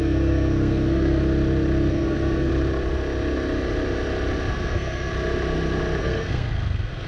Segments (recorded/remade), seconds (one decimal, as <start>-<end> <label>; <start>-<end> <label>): 0.0-1.2 remade; 1.2-1.9 recorded; 1.9-2.5 remade; 2.5-4.5 recorded; 4.5-5.1 remade; 5.1-6.0 recorded; 6.0-7.1 remade